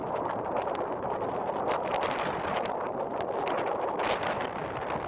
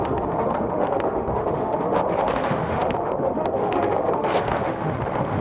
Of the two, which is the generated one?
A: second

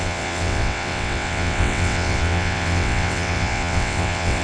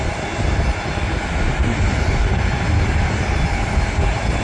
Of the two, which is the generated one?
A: first